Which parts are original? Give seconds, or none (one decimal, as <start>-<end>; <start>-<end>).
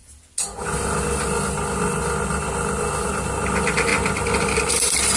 0.0-5.2